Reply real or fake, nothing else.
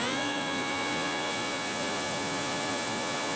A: fake